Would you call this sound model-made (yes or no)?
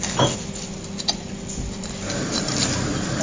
no